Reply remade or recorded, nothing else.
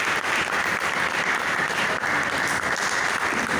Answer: recorded